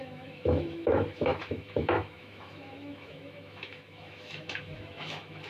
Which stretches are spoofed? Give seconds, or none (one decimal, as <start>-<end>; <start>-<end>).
0.0-5.5